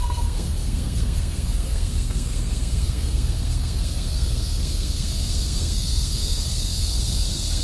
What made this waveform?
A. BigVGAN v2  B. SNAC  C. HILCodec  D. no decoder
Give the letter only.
B